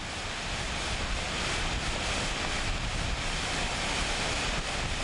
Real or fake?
real